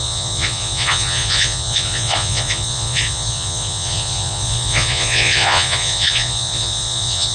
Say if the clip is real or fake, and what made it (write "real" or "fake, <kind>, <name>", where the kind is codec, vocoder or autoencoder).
fake, vocoder, Vocos